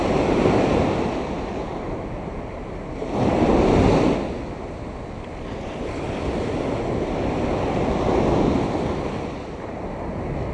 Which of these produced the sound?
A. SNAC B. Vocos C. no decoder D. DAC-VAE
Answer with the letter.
C